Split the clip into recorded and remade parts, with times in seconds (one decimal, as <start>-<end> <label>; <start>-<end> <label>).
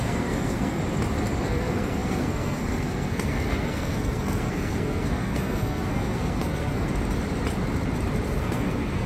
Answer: 0.0-0.8 remade; 0.8-1.4 recorded; 1.4-6.9 remade; 6.9-8.4 recorded; 8.4-9.1 remade